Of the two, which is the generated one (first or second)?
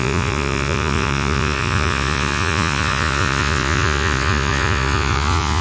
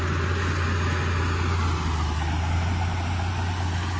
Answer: first